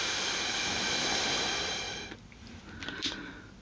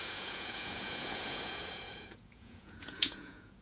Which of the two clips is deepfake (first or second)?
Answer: second